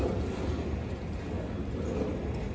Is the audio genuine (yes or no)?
yes